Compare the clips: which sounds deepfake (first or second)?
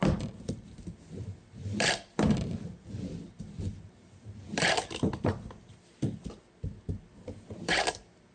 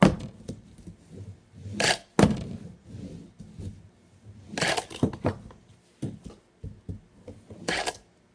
first